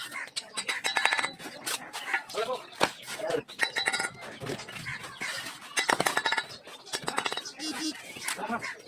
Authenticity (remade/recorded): recorded